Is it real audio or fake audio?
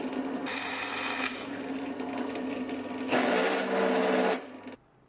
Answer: real